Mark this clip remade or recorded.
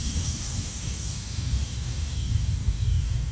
remade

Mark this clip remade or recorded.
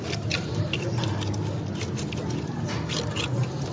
recorded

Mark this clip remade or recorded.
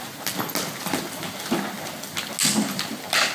recorded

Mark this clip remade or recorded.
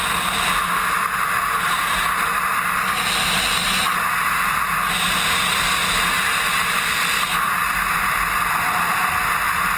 recorded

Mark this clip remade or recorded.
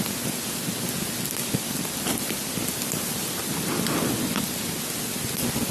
recorded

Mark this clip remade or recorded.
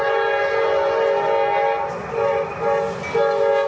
recorded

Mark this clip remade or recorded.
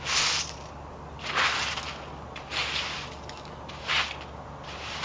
recorded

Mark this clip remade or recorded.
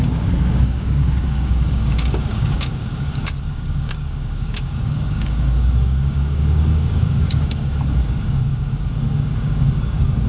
remade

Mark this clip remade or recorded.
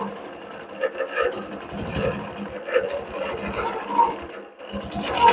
recorded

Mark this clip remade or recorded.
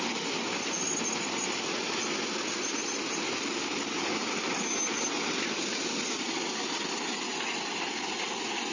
recorded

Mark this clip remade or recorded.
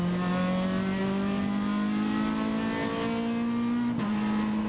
recorded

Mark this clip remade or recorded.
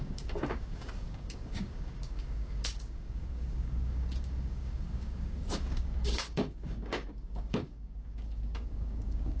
remade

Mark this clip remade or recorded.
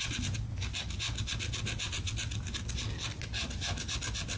recorded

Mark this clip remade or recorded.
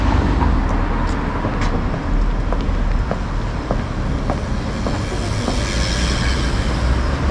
recorded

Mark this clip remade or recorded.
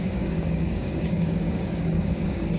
remade